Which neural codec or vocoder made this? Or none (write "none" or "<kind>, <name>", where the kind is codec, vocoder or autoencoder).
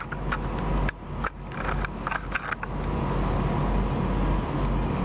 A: none